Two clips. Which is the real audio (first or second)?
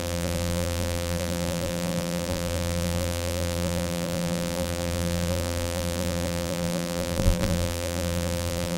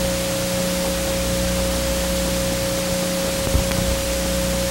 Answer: second